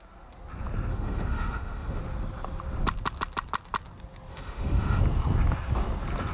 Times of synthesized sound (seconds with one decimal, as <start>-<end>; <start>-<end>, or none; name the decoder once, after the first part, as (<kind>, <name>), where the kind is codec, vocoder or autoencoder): 0.9-2.0 (autoencoder, DAC-VAE); 4.3-5.0